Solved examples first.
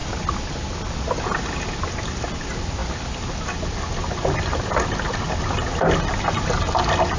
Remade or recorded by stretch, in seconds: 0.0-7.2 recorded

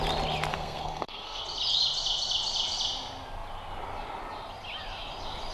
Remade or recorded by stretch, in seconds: 0.0-0.5 recorded; 0.5-1.4 remade; 1.4-5.5 recorded